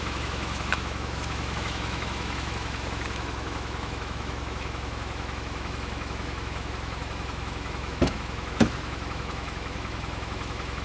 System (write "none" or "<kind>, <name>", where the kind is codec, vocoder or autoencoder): autoencoder, DAC-VAE